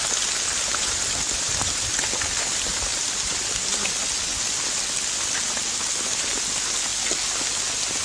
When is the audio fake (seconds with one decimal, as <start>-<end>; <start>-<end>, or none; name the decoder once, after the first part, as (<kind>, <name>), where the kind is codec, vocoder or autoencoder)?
none

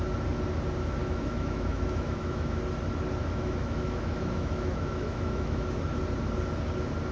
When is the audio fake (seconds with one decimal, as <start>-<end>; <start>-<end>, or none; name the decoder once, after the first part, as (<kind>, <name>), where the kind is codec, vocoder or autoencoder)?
1.0-2.6 (autoencoder, DAC-VAE); 3.2-6.0

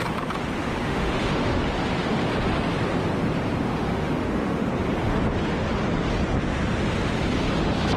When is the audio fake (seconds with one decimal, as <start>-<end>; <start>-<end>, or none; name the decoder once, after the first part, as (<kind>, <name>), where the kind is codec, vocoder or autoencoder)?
0.8-1.6 (autoencoder, DAC-VAE); 3.7-4.7

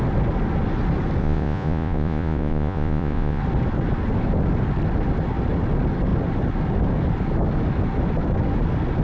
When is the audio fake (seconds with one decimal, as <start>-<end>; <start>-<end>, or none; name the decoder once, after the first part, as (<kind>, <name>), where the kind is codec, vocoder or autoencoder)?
1.2-3.4 (vocoder, Vocos)

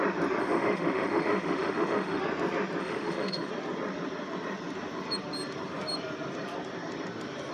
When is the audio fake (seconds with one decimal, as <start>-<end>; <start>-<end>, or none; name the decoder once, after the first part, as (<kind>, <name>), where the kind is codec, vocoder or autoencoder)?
0.4-2.2 (autoencoder, DAC-VAE); 2.8-3.5

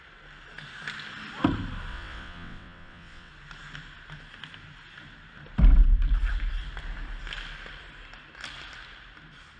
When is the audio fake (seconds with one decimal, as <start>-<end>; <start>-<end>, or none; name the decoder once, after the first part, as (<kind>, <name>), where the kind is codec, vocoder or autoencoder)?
1.9-3.3 (vocoder, WaveNeXt)

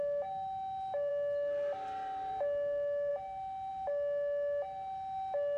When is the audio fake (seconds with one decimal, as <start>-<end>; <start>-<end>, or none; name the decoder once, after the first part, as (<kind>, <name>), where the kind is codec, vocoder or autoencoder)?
none